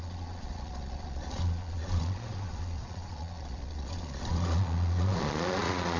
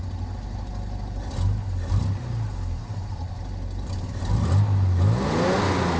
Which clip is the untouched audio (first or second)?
second